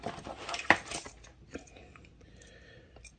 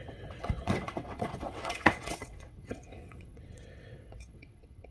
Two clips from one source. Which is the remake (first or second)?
second